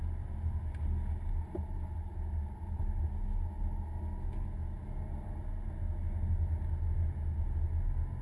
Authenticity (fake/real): real